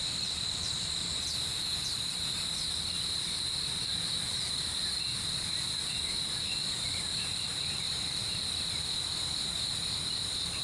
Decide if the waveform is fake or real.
real